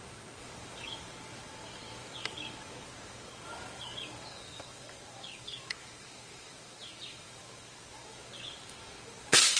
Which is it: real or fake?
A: fake